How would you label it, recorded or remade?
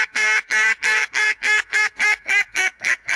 remade